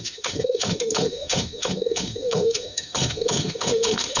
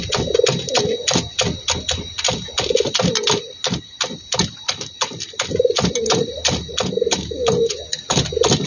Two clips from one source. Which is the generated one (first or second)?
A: first